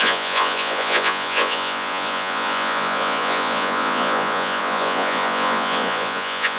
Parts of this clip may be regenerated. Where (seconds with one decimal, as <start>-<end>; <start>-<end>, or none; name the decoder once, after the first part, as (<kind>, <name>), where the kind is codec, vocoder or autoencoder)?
0.0-6.6 (vocoder, Vocos)